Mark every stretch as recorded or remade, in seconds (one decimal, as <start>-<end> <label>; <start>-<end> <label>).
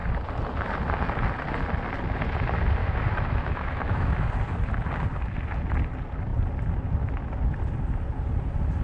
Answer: 0.0-2.8 recorded; 2.8-4.3 remade; 4.3-8.8 recorded